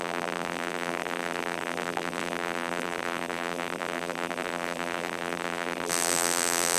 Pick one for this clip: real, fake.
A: fake